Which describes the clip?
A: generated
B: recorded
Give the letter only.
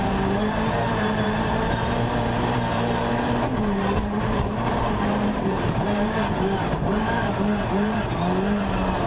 A